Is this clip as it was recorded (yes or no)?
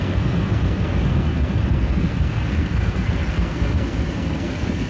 no